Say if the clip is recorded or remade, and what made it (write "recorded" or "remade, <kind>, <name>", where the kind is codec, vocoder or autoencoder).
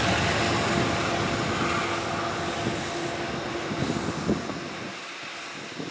recorded